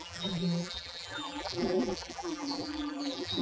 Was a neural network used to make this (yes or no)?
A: yes